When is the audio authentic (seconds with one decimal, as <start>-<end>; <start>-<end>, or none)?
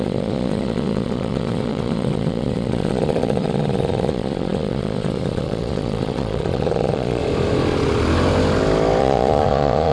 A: 7.2-9.0